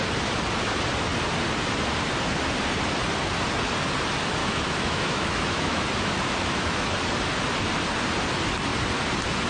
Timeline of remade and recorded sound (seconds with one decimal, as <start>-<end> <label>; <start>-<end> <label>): 0.0-4.4 recorded; 4.4-6.9 remade; 6.9-9.5 recorded